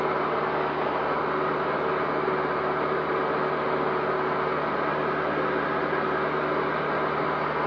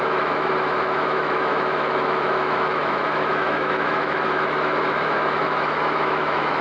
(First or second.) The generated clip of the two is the second